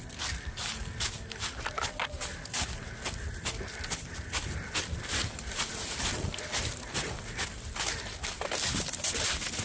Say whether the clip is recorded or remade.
recorded